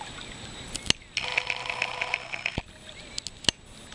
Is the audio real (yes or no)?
yes